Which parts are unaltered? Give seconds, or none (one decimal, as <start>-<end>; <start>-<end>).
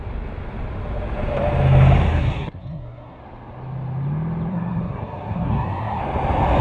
0.0-2.1; 3.2-4.5; 6.0-6.6